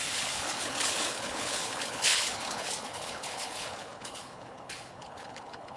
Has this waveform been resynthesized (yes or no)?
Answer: yes